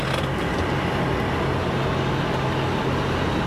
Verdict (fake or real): real